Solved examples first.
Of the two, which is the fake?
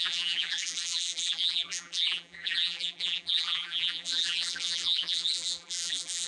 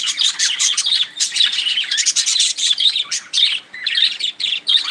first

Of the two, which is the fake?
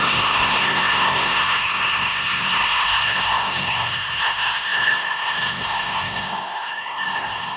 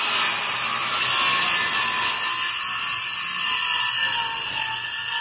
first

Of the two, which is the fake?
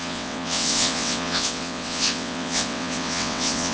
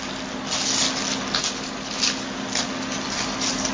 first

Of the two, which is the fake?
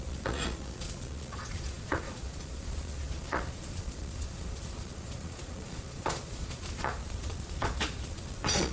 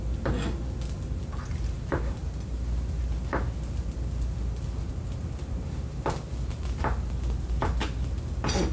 first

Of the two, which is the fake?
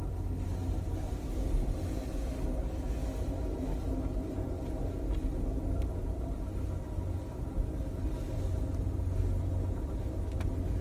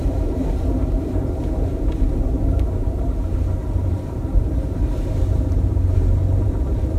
second